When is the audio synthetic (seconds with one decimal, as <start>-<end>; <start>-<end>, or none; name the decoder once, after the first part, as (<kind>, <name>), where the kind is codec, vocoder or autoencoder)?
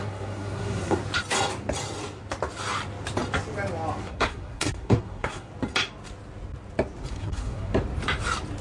0.0-1.0 (codec, SNAC); 4.0-5.5; 7.1-7.7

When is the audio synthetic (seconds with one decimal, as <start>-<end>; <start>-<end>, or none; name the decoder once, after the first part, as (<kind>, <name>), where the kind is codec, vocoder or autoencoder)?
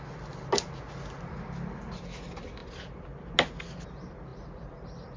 none